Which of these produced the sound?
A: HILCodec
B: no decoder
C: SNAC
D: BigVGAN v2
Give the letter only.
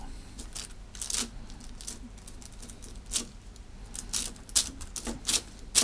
B